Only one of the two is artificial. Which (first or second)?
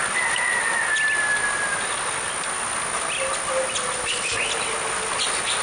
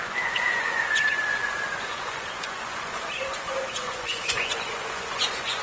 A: second